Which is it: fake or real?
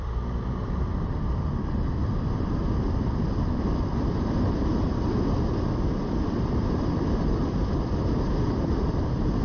fake